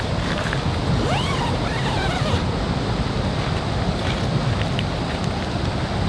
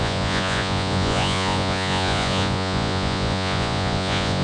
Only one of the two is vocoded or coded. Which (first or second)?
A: second